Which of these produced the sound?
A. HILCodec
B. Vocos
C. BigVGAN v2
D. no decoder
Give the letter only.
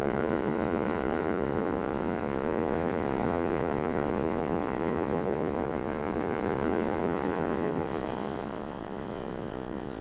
B